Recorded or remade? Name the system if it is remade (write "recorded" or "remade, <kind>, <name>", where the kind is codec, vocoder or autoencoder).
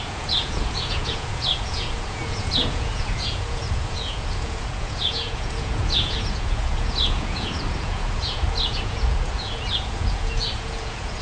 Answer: remade, vocoder, Vocos